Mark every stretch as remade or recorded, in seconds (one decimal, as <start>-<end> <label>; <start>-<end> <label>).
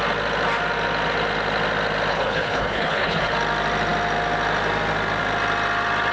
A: 0.0-2.1 recorded; 2.1-3.3 remade; 3.3-6.1 recorded